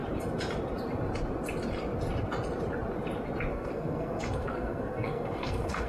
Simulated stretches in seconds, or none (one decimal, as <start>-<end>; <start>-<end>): 3.5-5.9